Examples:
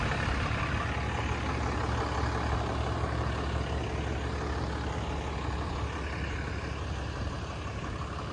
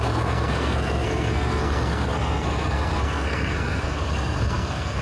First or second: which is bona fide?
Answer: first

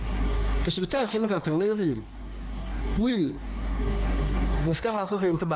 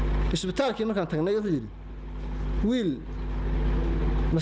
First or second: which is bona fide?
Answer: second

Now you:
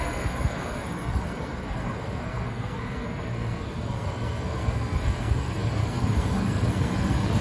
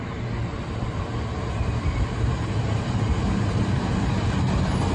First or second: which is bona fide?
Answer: second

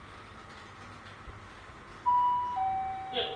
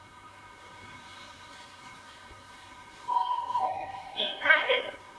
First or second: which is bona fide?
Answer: first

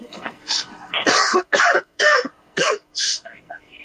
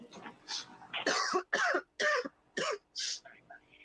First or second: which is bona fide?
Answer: second